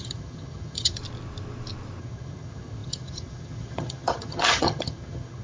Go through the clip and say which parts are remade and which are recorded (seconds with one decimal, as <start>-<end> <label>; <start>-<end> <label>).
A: 0.0-1.0 remade; 1.0-2.0 recorded; 2.0-5.4 remade